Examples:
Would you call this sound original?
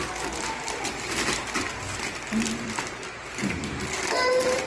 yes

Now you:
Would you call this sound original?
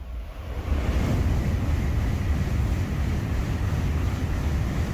yes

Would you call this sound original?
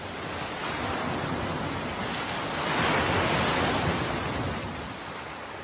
yes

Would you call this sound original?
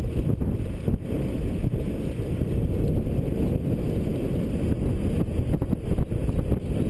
yes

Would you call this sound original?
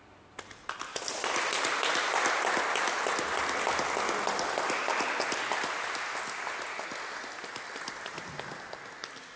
yes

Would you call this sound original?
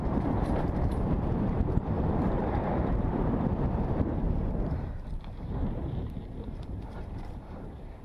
no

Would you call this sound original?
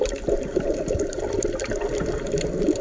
yes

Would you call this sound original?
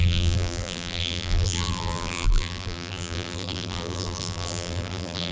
no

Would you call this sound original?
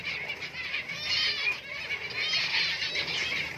yes